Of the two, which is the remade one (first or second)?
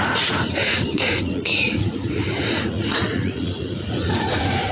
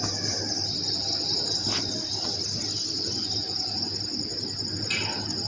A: first